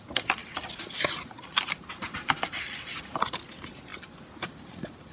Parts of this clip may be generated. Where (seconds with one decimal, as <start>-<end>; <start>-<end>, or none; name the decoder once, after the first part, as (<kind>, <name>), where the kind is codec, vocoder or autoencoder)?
none